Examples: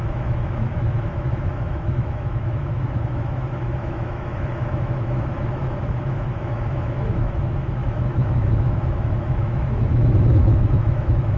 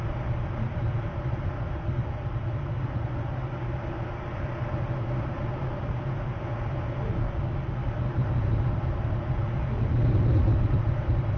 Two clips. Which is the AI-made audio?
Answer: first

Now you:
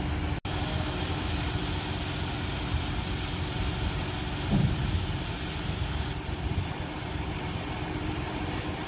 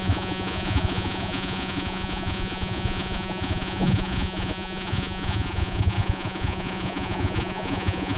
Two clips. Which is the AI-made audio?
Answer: second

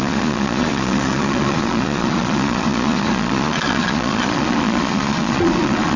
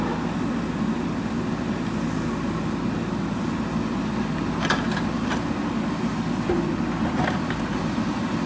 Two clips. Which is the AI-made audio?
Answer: first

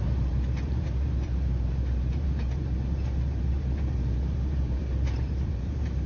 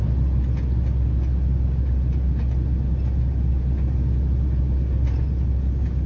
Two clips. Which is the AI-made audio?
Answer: first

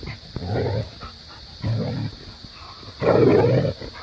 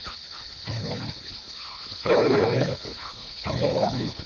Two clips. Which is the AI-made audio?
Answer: second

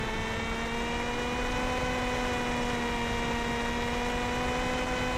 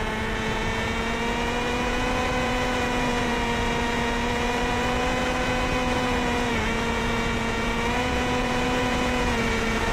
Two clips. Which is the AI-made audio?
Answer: second